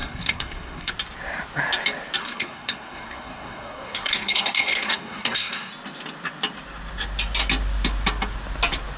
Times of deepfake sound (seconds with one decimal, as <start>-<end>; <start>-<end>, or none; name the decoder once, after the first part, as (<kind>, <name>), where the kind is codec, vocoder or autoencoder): 0.0-0.9 (codec, SNAC); 2.2-5.7